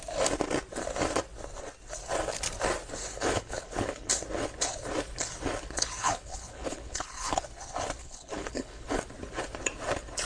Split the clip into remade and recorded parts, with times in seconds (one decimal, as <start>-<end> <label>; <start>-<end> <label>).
0.0-3.1 recorded; 3.1-4.1 remade; 4.1-6.0 recorded; 6.0-7.4 remade; 7.4-8.0 recorded; 8.0-9.0 remade; 9.0-10.3 recorded